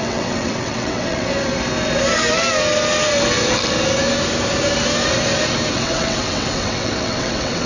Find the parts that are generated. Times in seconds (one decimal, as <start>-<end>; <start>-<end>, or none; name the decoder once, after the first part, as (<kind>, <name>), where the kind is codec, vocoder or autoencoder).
0.0-1.3 (vocoder, WaveNeXt); 5.7-7.7